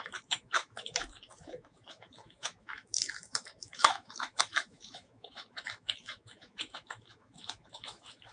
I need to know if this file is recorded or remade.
remade